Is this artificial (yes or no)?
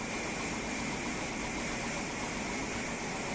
no